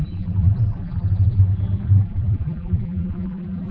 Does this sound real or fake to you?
fake